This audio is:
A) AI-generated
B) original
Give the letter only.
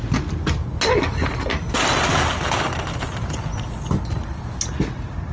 B